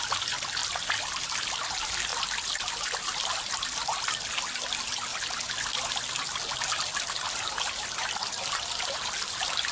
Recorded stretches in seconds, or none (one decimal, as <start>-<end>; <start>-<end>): 0.0-0.6; 1.3-2.1; 3.5-9.7